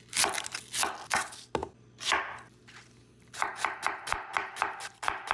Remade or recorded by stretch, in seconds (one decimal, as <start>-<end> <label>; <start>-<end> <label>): 0.0-5.3 recorded